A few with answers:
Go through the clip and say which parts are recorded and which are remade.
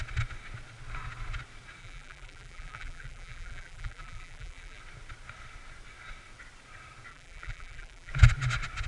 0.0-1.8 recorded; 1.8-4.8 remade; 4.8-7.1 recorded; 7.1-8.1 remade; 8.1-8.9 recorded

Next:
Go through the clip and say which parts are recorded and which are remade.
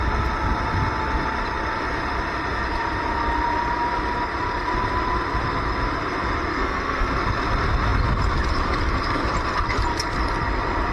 0.0-6.5 recorded; 6.5-7.1 remade; 7.1-10.9 recorded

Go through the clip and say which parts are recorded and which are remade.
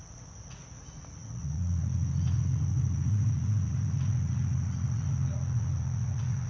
0.0-6.5 remade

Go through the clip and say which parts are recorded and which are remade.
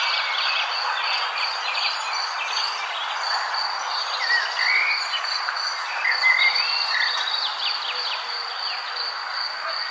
0.0-9.9 recorded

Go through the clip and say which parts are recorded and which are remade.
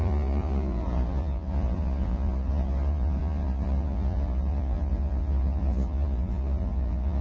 0.0-7.2 remade